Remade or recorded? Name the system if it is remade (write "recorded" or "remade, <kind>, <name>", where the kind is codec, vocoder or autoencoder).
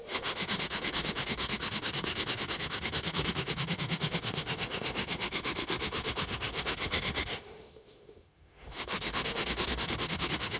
remade, autoencoder, DAC-VAE